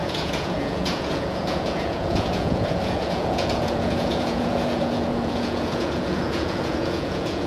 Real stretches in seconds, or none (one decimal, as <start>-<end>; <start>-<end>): none